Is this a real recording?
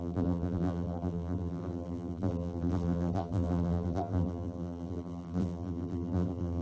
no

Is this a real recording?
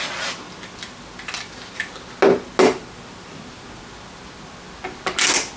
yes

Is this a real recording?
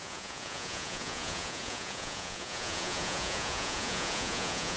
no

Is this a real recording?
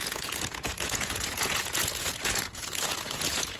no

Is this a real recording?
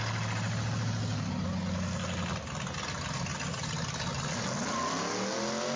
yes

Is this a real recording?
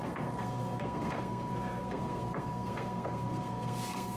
no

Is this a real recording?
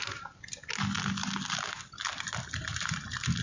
yes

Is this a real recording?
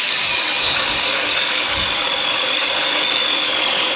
no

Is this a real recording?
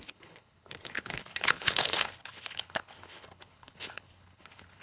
no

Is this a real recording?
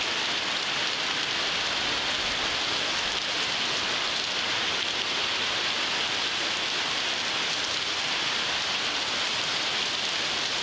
yes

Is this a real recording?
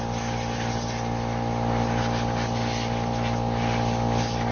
yes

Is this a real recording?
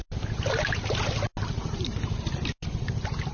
yes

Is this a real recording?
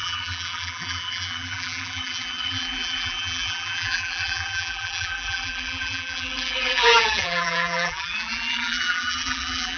no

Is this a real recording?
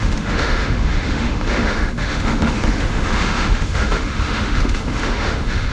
no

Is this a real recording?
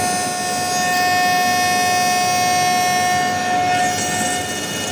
yes